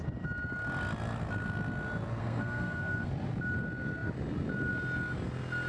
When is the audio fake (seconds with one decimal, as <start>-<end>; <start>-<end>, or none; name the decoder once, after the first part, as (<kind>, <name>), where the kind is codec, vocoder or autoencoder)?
2.2-3.1 (codec, SNAC)